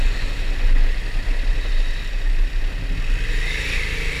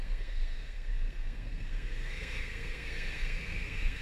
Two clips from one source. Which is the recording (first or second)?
first